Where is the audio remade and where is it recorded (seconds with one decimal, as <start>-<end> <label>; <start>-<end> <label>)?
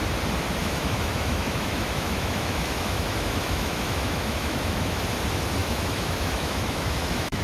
0.0-0.6 recorded; 0.6-5.0 remade; 5.0-5.6 recorded; 5.6-7.4 remade